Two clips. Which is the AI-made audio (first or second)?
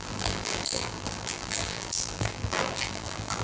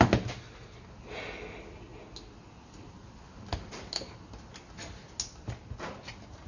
first